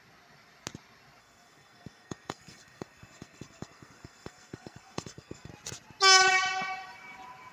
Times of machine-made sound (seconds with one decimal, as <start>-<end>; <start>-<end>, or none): 1.2-5.5

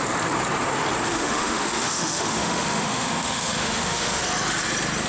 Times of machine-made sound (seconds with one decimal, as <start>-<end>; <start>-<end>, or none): 1.1-4.2